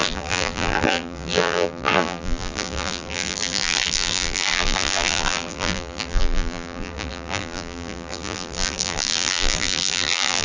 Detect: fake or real fake